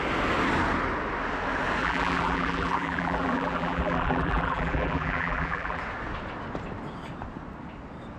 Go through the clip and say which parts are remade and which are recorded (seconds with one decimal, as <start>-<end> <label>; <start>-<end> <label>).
0.0-1.8 recorded; 1.8-5.8 remade; 5.8-8.2 recorded